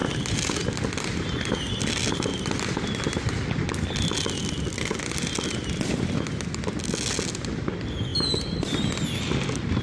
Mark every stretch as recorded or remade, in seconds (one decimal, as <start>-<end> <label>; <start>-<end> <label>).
0.0-2.3 recorded; 2.3-2.9 remade; 2.9-8.1 recorded; 8.1-8.9 remade; 8.9-9.8 recorded